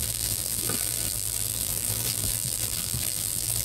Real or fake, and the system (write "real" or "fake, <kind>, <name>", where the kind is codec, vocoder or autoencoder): fake, vocoder, BigVGAN v2